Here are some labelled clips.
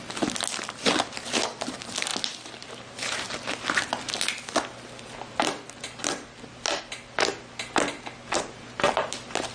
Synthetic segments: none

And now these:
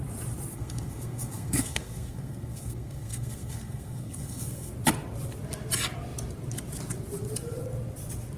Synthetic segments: 0.5-4.7 (codec, SNAC)

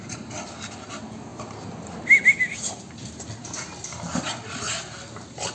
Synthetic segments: none

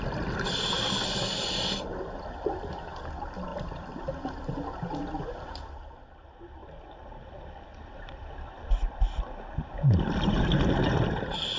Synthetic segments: 1.9-3.1 (vocoder, BigVGAN v2); 3.5-5.7

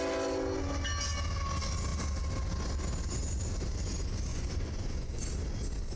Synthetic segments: 4.3-5.2 (vocoder, Vocos)

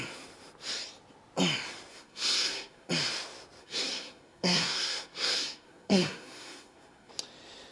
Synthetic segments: 1.9-2.9 (codec, SNAC); 3.6-7.1